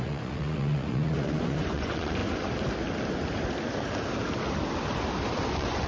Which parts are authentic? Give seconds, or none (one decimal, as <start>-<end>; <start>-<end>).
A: 2.2-5.5